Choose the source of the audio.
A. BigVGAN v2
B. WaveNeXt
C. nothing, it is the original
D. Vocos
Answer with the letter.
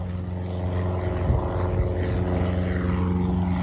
C